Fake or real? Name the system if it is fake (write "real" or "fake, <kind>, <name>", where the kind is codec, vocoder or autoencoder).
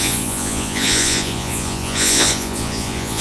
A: fake, vocoder, Vocos